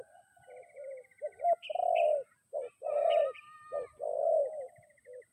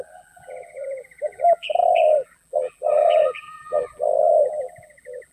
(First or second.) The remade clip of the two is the second